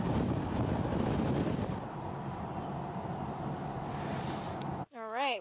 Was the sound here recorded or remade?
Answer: recorded